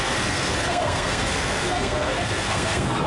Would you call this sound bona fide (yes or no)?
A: no